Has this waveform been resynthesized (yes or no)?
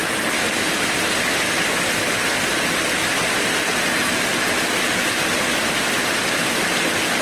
no